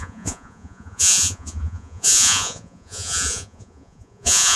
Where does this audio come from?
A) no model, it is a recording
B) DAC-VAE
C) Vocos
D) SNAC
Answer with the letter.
C